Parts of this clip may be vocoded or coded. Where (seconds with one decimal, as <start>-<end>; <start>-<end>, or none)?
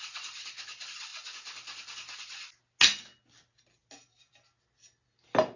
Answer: none